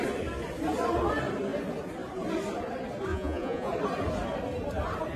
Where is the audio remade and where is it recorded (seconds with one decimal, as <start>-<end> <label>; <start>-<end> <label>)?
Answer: 0.0-3.1 recorded; 3.1-3.7 remade; 3.7-5.2 recorded